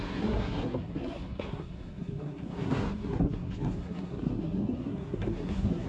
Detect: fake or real fake